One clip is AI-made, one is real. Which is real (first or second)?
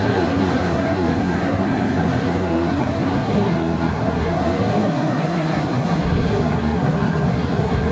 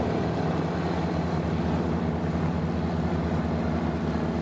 second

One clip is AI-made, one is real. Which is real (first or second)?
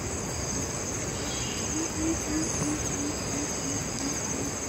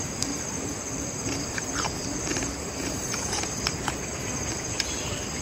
first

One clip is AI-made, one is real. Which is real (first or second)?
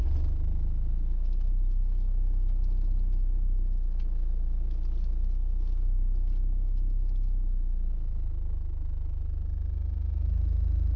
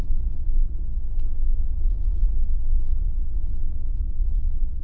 first